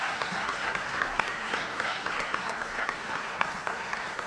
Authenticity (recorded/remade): remade